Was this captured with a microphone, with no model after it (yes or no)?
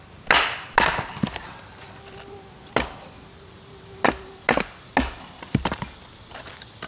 yes